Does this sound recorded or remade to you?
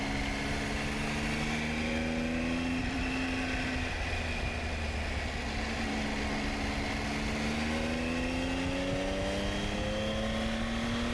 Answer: recorded